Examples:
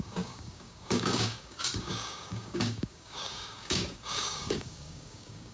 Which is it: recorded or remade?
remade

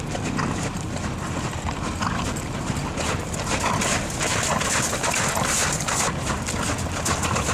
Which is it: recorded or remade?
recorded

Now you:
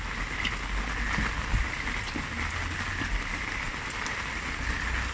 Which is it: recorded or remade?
recorded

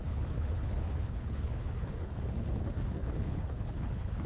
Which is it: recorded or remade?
remade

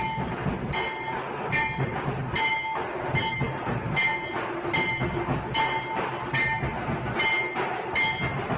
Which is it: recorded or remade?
recorded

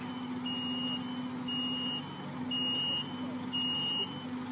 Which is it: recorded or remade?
recorded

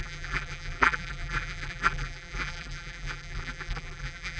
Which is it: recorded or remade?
remade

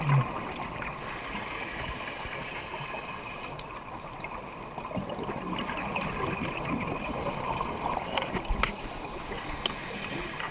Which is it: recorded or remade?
recorded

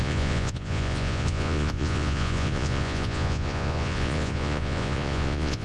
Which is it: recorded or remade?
remade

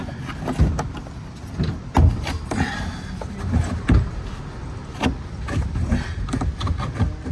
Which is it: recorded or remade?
recorded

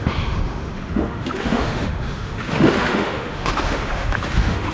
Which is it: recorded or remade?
remade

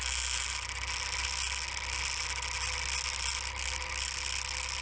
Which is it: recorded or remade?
recorded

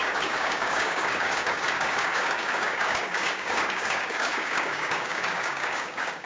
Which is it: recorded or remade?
remade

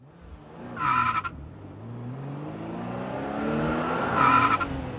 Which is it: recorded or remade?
recorded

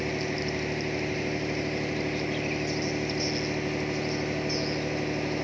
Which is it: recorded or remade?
recorded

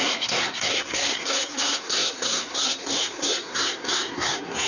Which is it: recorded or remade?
remade